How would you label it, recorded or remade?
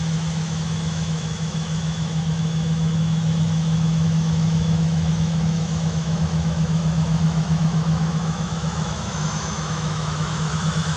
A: remade